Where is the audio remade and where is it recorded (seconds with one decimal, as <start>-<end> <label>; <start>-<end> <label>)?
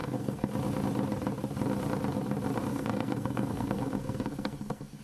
0.0-0.5 remade; 0.5-2.7 recorded; 2.7-5.0 remade